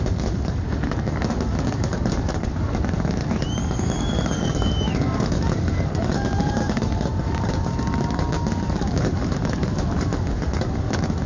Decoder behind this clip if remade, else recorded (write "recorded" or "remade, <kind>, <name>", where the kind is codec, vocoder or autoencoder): remade, codec, DAC